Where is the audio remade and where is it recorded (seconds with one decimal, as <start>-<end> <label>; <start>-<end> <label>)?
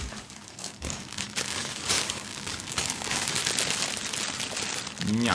0.0-3.4 remade; 3.4-5.3 recorded